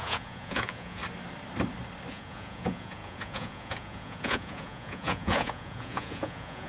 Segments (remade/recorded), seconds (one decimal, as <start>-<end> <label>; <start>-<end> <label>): 0.0-1.0 remade; 1.0-2.1 recorded; 2.1-6.7 remade